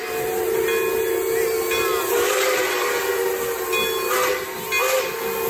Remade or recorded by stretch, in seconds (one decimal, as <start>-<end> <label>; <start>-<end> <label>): 0.0-5.5 recorded